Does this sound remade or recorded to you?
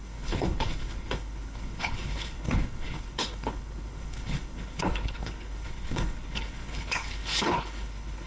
remade